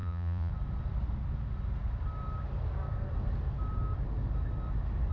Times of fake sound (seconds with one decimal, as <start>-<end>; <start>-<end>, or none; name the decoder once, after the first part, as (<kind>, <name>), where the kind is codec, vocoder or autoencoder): 0.0-0.5 (vocoder, Vocos)